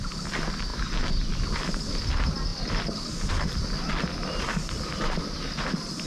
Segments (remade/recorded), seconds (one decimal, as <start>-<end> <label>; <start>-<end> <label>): 0.0-6.1 recorded

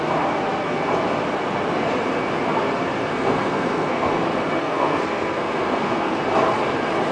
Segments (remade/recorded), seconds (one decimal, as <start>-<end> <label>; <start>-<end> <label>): 0.0-3.0 recorded; 3.0-4.1 remade; 4.1-4.6 recorded; 4.6-6.1 remade; 6.1-7.1 recorded

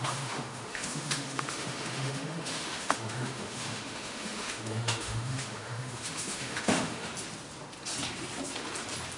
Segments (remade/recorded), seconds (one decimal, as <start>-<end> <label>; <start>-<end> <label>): 0.0-7.1 remade; 7.1-9.2 recorded

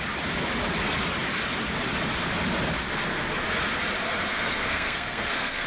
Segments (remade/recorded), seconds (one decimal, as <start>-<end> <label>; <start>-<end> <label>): 0.0-4.3 recorded; 4.3-5.7 remade

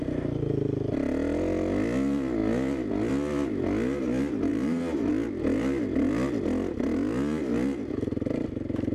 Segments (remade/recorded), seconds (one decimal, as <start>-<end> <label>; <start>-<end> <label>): 0.0-4.5 recorded; 4.5-5.1 remade; 5.1-8.9 recorded

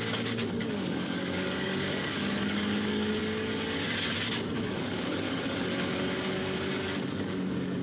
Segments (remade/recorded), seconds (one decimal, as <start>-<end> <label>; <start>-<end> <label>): 0.0-3.2 remade; 3.2-4.6 recorded; 4.6-7.8 remade